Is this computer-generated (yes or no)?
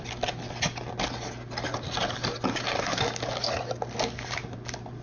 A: no